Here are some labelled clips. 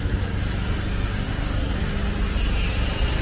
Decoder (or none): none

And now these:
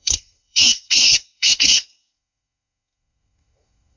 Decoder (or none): codec, SNAC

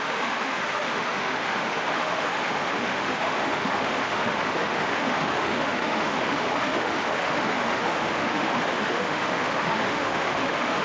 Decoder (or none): autoencoder, DAC-VAE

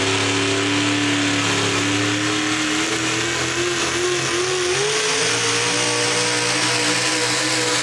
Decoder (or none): none